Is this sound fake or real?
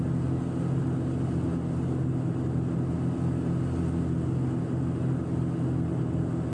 real